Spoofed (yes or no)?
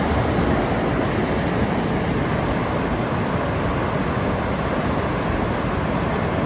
no